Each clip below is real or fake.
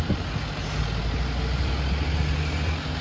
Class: real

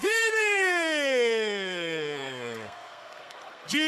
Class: fake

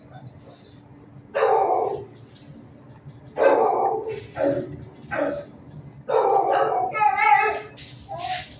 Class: real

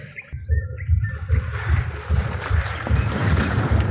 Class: fake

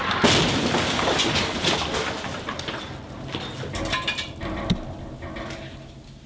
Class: real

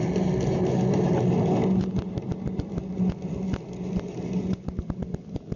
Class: real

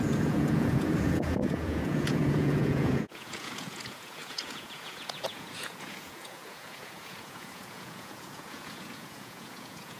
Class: fake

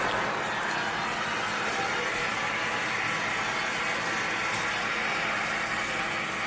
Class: real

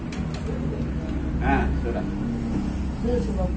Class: real